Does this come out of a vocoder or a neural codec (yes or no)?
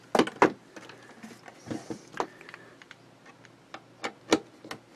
no